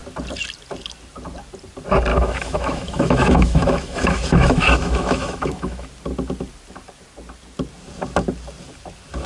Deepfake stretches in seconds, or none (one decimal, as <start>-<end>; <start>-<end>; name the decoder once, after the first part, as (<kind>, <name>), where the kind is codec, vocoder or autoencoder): 2.1-5.9 (autoencoder, DAC-VAE)